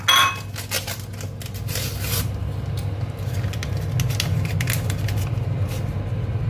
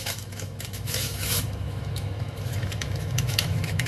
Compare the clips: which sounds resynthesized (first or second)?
second